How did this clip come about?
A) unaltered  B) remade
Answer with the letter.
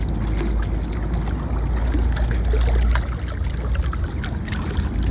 A